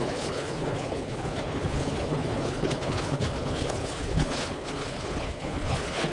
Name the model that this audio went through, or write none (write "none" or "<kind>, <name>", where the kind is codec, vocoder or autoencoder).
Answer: codec, HILCodec